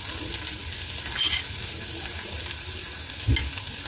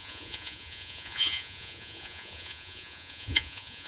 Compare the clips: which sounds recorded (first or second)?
first